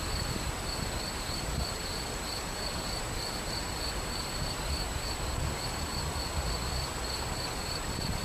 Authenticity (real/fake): real